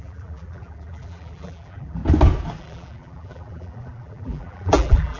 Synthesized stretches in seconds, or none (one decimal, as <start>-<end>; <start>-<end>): 0.0-2.0; 2.6-5.2